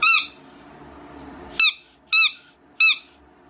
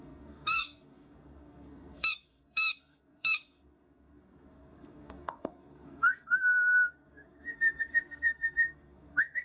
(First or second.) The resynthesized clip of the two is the second